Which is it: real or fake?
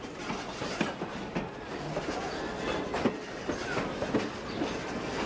real